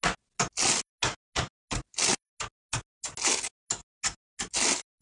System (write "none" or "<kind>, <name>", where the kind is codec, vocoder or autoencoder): none